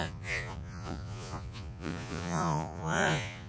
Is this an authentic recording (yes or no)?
no